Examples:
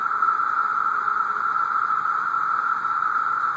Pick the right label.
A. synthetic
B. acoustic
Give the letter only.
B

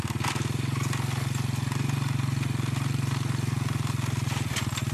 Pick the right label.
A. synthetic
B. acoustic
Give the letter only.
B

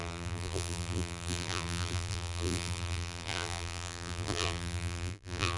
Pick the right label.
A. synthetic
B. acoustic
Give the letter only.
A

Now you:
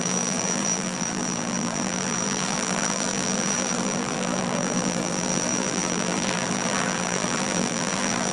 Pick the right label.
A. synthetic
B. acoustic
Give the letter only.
A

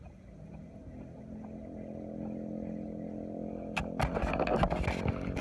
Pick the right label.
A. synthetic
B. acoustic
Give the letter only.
B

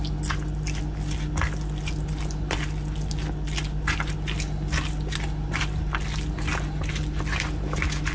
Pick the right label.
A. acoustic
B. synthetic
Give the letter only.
A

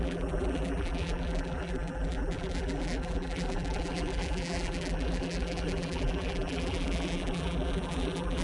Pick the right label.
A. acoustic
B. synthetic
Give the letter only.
B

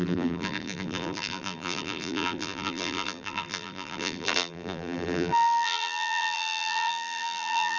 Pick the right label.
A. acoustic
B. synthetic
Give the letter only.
B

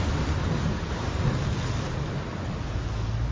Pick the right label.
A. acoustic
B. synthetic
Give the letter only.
A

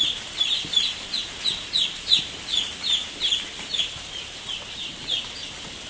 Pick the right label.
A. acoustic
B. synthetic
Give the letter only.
A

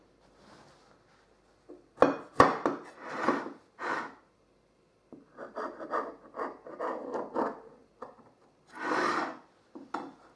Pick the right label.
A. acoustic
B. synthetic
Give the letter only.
A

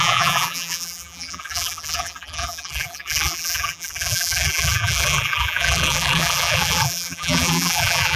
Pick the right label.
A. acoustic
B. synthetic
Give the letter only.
B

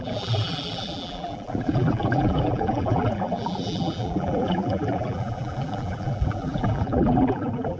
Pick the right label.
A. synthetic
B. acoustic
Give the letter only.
A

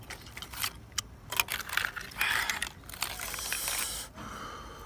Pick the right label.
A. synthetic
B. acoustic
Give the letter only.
B